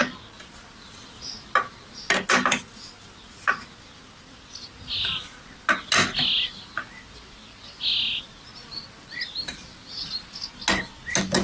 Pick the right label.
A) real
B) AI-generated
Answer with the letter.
A